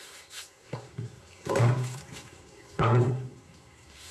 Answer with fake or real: fake